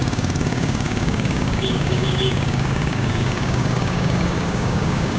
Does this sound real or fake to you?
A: fake